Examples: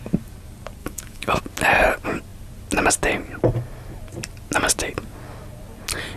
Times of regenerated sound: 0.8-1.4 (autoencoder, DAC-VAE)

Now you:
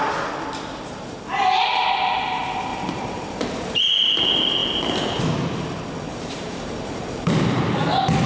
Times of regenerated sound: 2.7-3.9 (vocoder, BigVGAN v2); 4.6-5.2; 6.1-7.8

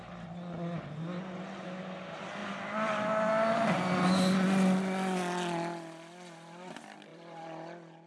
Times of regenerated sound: 7.1-8.1 (vocoder, BigVGAN v2)

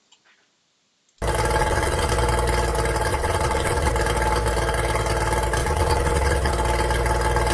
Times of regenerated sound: 1.6-2.1 (vocoder, WaveNeXt); 3.1-3.9; 5.6-6.5

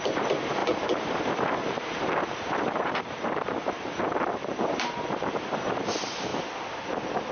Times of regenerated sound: 0.0-6.3 (vocoder, BigVGAN v2)

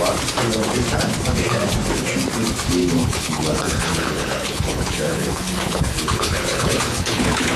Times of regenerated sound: 2.8-7.6 (codec, HILCodec)

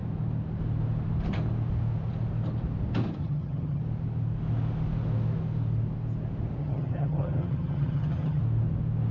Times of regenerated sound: 3.2-3.8 (vocoder, HiFi-GAN); 6.6-8.4

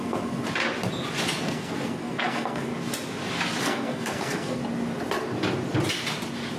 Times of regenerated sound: 0.0-0.4 (codec, SNAC); 1.4-2.7; 3.6-4.6